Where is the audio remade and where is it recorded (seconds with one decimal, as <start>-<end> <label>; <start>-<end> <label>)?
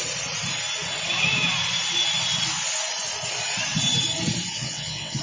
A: 0.0-4.5 recorded; 4.5-5.2 remade